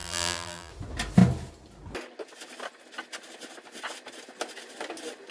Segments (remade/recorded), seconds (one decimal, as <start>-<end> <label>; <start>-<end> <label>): 0.0-0.7 remade; 0.7-5.3 recorded